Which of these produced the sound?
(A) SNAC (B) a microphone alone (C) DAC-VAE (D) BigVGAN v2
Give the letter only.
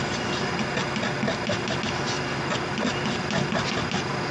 B